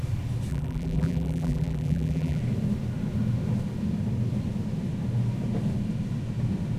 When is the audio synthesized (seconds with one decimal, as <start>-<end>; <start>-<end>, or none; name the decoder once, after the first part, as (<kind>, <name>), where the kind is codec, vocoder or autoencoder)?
0.5-2.4 (vocoder, BigVGAN v2)

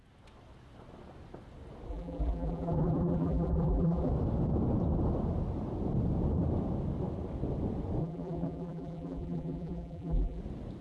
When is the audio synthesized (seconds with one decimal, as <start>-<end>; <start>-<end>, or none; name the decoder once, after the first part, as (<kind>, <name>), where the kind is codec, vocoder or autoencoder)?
1.9-4.1 (vocoder, BigVGAN v2); 8.0-10.4

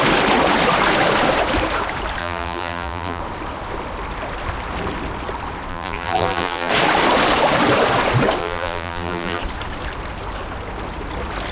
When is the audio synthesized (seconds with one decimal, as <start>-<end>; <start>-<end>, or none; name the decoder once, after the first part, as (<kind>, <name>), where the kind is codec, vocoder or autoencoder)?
2.2-3.2 (vocoder, BigVGAN v2); 5.7-6.7; 8.4-9.4

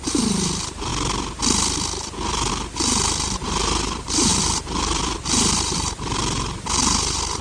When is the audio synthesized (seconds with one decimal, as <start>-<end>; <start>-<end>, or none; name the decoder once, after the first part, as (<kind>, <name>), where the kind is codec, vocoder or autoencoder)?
0.0-0.9 (vocoder, BigVGAN v2); 2.5-7.4

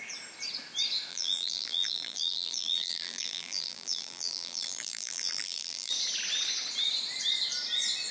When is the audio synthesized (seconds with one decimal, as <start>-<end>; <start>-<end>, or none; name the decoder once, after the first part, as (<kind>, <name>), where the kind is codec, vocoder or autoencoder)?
1.1-5.9 (vocoder, BigVGAN v2)

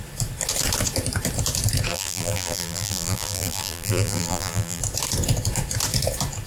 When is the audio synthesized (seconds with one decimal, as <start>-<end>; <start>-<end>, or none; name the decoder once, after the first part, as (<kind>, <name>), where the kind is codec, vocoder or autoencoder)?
1.9-4.8 (vocoder, BigVGAN v2)